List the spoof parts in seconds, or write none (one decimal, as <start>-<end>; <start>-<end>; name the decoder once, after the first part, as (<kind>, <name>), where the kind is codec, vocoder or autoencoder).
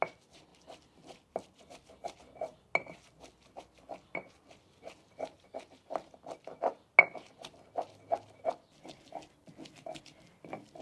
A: none